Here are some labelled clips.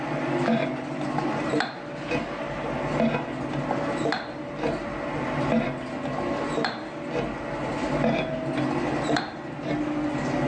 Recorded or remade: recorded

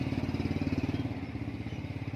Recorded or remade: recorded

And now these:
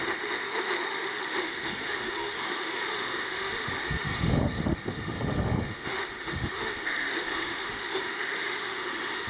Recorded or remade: remade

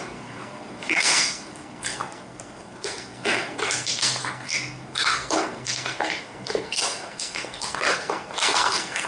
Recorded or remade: remade